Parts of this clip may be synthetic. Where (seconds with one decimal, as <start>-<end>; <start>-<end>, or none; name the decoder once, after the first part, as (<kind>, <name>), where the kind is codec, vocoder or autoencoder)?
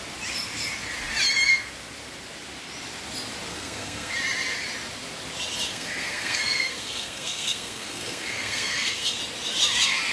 3.5-4.1 (codec, SNAC); 5.7-9.2